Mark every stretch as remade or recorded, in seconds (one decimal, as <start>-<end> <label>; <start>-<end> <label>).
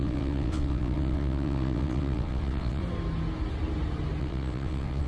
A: 0.0-2.8 remade; 2.8-4.2 recorded; 4.2-5.1 remade